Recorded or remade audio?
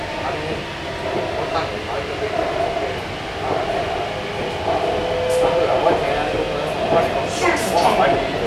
recorded